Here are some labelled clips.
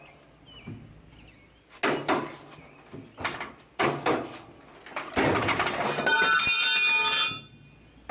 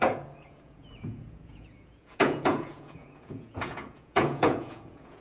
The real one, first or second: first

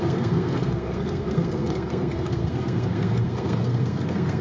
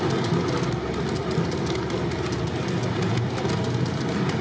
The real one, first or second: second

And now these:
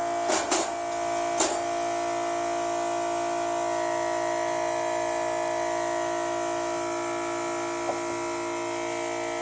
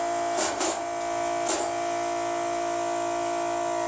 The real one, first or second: first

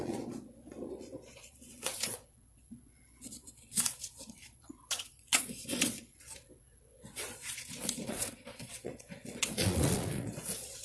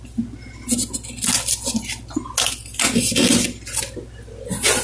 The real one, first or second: second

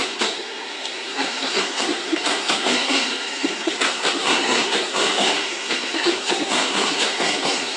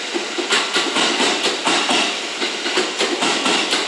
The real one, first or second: second